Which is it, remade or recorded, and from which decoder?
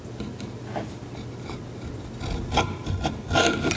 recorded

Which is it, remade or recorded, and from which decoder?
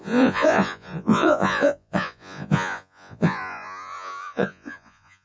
remade, vocoder, Vocos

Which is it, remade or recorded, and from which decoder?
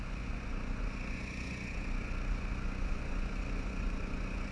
remade, vocoder, Vocos